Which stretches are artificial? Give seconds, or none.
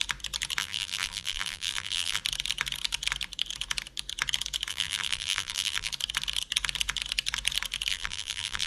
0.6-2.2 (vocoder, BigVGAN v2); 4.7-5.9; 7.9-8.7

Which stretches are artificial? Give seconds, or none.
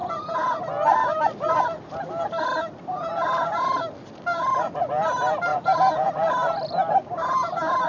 0.0-0.6 (vocoder, Vocos); 5.5-6.1